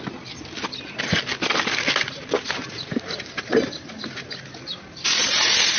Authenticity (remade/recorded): recorded